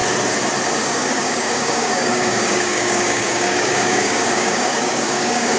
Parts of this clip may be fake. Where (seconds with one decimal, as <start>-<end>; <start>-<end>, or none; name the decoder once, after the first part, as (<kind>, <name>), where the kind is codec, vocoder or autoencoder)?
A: 0.8-5.6 (codec, DAC)